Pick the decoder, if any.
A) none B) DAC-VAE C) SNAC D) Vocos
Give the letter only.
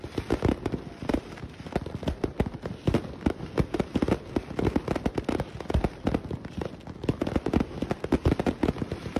A